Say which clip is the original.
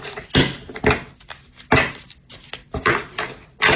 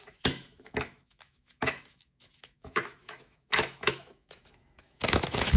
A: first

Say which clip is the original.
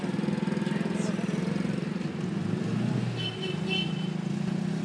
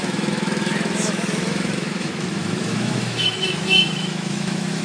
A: first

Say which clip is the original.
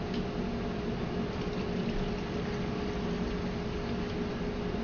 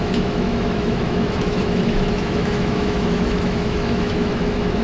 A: first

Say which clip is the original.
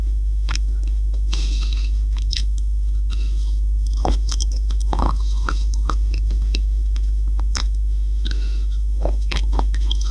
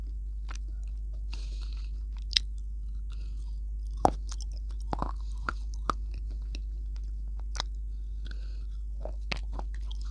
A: second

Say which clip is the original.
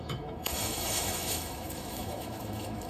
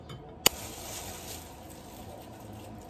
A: second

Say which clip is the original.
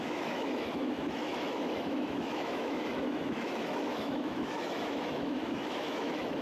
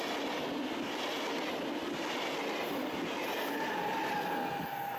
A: second